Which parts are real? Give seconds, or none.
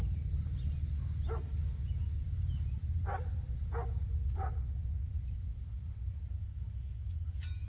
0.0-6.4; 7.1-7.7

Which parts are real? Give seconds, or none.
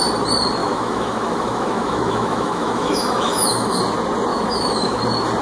0.0-0.6; 3.8-4.3; 5.0-5.4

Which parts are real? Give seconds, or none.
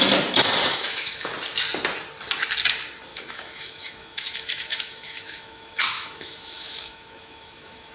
0.0-0.7; 1.3-3.1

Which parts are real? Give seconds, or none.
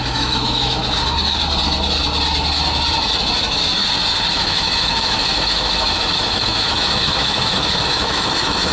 0.8-4.3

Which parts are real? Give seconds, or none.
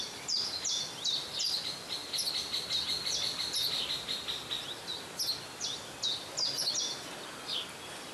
0.0-8.1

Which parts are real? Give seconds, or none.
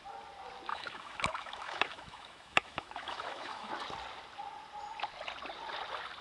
0.0-0.7; 3.7-6.2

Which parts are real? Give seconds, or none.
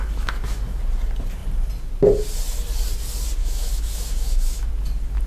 0.8-3.4; 4.7-5.3